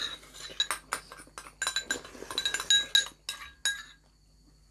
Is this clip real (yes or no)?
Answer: yes